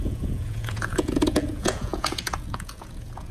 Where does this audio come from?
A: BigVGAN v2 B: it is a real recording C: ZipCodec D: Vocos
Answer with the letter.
D